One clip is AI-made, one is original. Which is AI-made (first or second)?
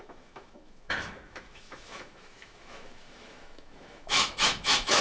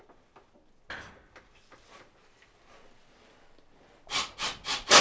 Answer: first